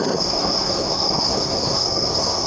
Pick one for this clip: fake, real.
fake